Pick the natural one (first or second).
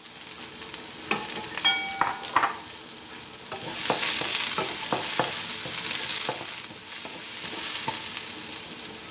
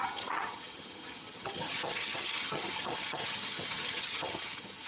first